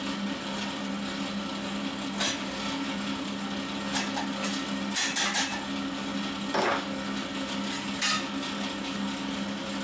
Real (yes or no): yes